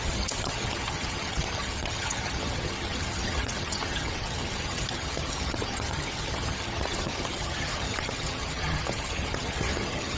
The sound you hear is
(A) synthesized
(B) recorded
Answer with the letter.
A